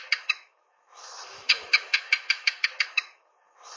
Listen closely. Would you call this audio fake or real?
fake